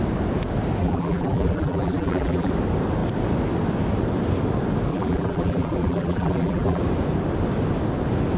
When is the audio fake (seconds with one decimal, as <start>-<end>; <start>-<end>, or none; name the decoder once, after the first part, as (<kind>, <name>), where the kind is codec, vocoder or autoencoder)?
0.8-2.5 (vocoder, BigVGAN v2); 4.9-6.8